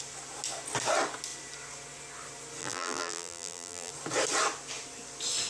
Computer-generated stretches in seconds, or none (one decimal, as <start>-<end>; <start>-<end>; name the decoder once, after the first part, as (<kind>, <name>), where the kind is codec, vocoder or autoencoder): 2.6-3.9 (vocoder, BigVGAN v2)

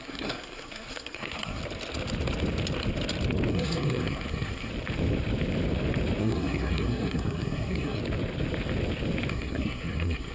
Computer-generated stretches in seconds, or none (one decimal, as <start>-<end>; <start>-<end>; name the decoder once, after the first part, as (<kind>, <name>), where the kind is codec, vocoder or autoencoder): 0.0-1.6 (codec, SNAC); 3.5-4.7; 6.2-8.0; 9.3-10.3

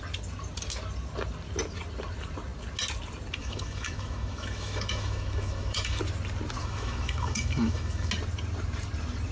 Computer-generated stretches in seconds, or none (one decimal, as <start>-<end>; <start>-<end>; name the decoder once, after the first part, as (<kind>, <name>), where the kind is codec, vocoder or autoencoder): 3.4-6.0 (autoencoder, DAC-VAE); 6.6-8.1

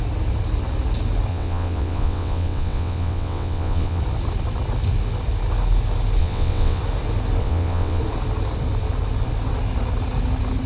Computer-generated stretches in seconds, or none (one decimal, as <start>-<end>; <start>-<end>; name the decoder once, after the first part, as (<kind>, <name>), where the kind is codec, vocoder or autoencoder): 1.3-4.0 (vocoder, WaveNeXt); 6.2-6.8; 7.4-8.0

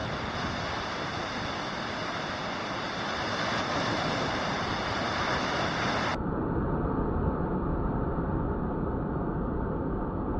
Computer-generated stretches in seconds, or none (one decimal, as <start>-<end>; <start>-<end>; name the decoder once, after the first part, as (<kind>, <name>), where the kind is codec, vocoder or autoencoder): 2.6-5.2 (vocoder, BigVGAN v2); 6.1-6.9

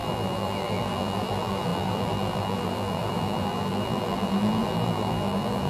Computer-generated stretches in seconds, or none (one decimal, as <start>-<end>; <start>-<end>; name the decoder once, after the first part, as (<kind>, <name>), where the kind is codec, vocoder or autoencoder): 0.0-5.7 (vocoder, BigVGAN v2)

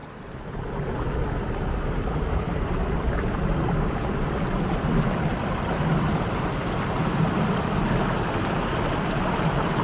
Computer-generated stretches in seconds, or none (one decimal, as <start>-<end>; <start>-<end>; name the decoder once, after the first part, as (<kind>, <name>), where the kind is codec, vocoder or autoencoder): 0.5-5.3 (vocoder, BigVGAN v2); 5.9-7.0; 7.5-9.8

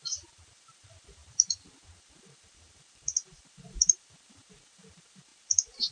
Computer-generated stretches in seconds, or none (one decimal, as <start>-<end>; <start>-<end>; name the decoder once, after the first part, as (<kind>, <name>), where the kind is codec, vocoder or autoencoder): 0.0-5.9 (vocoder, BigVGAN v2)